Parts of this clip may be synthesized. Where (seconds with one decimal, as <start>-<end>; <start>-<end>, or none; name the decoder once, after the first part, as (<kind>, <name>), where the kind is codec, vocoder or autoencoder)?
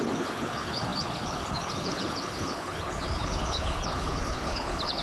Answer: 0.0-5.0 (codec, HILCodec)